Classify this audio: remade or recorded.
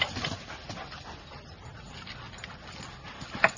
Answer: recorded